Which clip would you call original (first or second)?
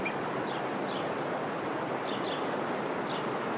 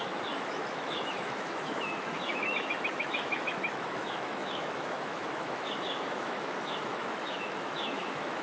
first